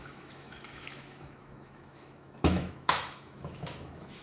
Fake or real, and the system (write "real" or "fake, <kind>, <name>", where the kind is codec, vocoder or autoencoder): fake, autoencoder, DAC-VAE